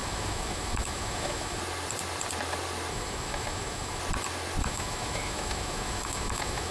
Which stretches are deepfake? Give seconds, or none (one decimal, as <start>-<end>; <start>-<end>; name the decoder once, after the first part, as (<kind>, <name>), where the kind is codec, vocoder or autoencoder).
0.0-1.6 (autoencoder, DAC-VAE); 2.9-4.0; 4.6-6.7

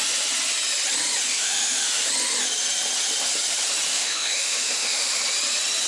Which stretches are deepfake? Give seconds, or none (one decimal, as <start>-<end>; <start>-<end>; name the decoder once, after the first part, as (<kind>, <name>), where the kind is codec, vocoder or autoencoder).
1.3-2.1 (autoencoder, DAC-VAE); 3.9-5.2

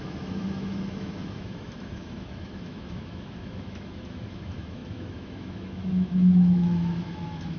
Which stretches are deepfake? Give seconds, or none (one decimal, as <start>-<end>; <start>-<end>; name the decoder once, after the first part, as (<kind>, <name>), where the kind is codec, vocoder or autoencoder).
0.0-7.6 (autoencoder, DAC-VAE)

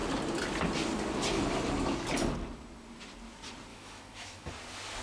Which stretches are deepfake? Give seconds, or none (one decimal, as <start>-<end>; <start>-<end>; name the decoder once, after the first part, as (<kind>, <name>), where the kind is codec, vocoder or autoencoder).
3.7-4.5 (autoencoder, DAC-VAE)

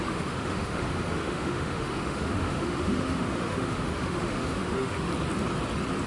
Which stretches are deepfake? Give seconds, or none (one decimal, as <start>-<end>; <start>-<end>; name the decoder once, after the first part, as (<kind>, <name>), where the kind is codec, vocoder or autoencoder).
0.0-5.1 (autoencoder, DAC-VAE)

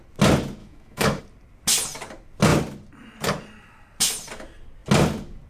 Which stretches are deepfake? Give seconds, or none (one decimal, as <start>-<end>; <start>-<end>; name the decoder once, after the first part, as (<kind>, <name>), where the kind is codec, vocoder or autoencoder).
0.6-1.2 (autoencoder, DAC-VAE)